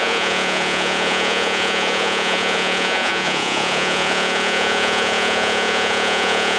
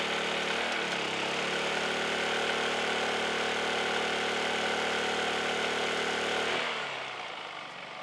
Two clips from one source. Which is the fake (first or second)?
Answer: first